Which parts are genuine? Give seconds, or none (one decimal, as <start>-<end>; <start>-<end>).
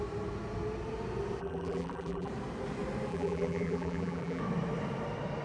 0.0-1.4; 2.3-3.1; 4.4-5.4